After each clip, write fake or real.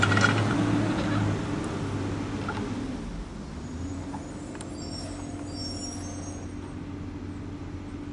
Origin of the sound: real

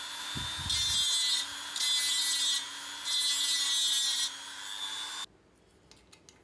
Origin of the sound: real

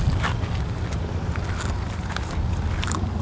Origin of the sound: real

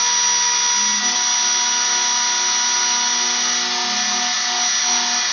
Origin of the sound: real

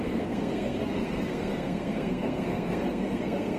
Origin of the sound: fake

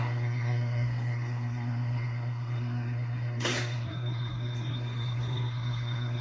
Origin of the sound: fake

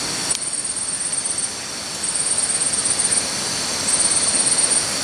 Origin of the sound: real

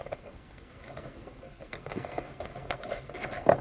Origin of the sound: fake